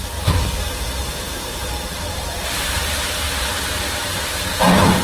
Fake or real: fake